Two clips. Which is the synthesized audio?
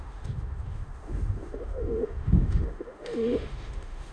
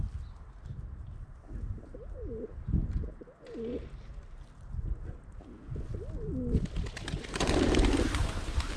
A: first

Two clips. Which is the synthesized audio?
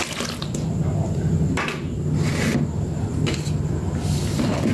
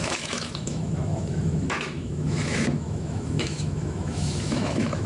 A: second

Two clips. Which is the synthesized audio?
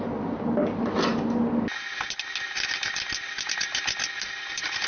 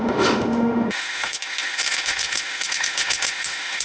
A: second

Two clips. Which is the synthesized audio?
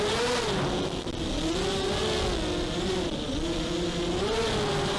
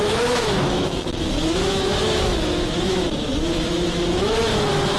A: second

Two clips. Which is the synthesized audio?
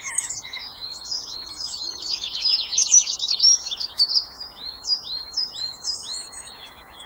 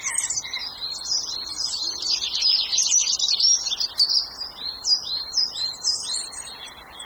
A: first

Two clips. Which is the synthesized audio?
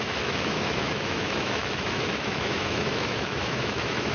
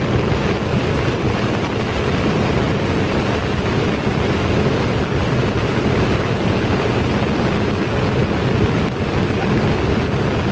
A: first